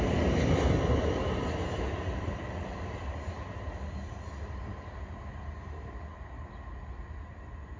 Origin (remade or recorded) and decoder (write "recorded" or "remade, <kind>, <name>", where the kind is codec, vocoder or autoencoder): recorded